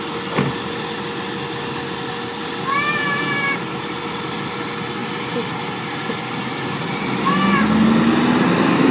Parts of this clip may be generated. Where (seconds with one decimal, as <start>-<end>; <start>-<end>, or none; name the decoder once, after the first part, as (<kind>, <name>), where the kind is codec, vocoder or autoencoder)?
none